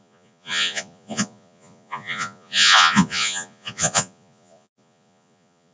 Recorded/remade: remade